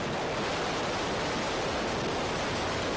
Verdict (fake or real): real